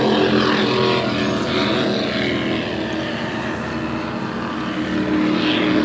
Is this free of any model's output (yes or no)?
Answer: yes